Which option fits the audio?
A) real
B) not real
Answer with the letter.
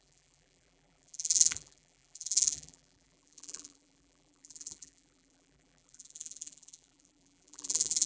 B